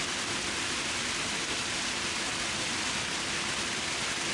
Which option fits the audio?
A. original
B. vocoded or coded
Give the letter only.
A